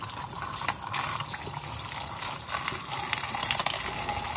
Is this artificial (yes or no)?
no